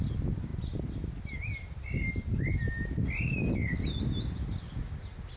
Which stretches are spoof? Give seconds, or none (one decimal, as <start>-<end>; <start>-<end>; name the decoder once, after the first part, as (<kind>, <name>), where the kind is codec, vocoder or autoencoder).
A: none